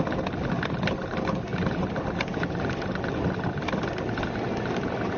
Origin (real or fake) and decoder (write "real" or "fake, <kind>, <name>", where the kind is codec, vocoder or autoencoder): real